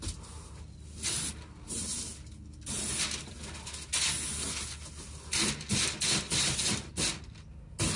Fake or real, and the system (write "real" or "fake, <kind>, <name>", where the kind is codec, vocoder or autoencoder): real